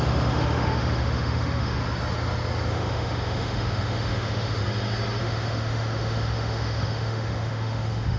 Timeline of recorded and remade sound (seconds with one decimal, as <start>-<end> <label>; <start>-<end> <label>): 0.0-1.8 remade; 1.8-2.7 recorded; 2.7-4.6 remade; 4.6-5.2 recorded; 5.2-8.2 remade